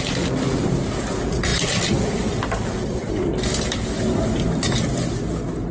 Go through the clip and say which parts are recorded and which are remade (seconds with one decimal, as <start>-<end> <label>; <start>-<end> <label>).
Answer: 0.0-5.7 recorded